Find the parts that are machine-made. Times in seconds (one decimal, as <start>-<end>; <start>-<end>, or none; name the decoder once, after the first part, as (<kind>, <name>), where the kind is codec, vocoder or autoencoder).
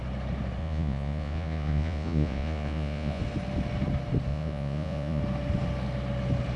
0.6-3.2 (vocoder, Vocos); 4.3-5.2